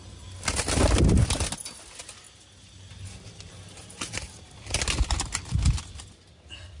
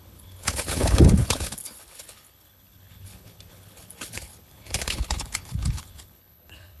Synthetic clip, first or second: second